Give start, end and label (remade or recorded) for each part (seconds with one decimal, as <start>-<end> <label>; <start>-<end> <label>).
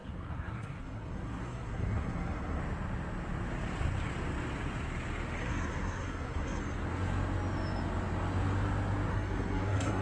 0.0-2.6 remade; 2.6-5.4 recorded; 5.4-6.6 remade; 6.6-9.1 recorded; 9.1-10.0 remade